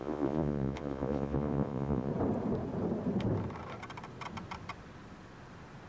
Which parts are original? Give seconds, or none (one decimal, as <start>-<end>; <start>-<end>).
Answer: 2.1-5.9

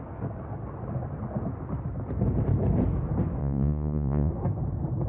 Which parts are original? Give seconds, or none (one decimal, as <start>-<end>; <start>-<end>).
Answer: 0.0-3.4; 4.3-5.1